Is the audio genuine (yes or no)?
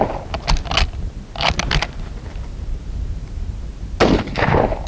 yes